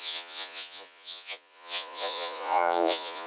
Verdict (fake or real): fake